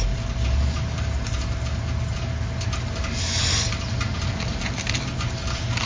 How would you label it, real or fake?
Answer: real